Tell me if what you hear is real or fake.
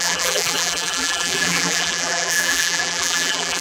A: fake